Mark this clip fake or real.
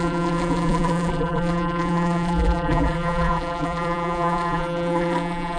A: fake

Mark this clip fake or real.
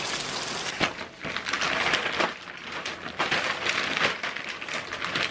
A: real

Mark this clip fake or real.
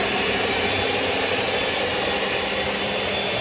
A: real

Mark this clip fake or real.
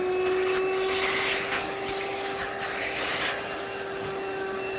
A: real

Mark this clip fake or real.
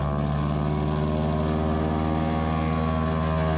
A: real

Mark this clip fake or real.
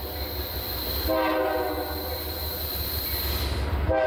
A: real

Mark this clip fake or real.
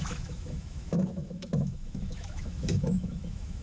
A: fake